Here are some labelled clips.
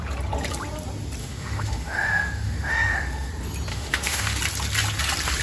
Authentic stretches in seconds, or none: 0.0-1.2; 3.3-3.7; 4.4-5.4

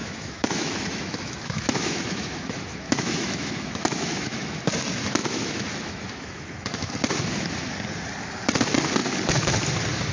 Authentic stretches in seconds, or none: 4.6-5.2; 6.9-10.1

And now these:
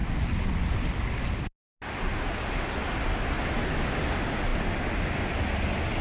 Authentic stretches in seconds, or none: 0.0-6.0

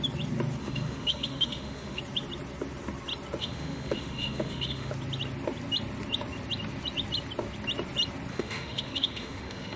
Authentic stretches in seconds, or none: 0.0-0.6; 2.0-3.4; 4.9-8.3

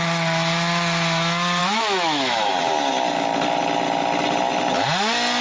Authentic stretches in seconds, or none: 0.0-1.6; 2.5-5.4

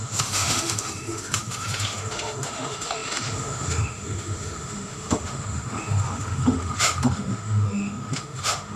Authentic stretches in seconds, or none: none

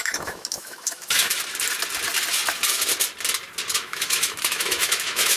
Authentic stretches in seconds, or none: 1.3-3.7